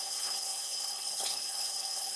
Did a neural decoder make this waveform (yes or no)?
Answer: yes